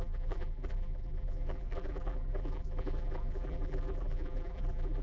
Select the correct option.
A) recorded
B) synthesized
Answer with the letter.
B